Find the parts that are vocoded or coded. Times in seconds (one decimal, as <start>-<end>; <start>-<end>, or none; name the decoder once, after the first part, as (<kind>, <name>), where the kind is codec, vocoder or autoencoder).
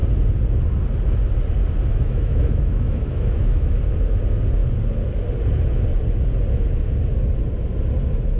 1.9-3.8 (autoencoder, DAC-VAE)